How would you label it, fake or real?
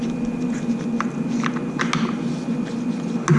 real